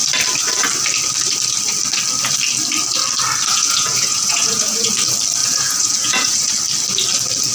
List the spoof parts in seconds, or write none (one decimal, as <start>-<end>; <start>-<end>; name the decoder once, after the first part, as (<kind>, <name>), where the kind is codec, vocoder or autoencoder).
3.5-4.9 (vocoder, Vocos); 5.4-6.5